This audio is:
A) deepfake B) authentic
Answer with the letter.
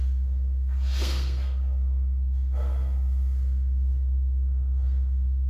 A